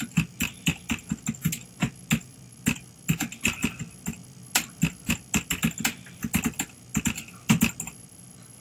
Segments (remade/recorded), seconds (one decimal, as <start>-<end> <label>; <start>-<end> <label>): 0.0-8.6 recorded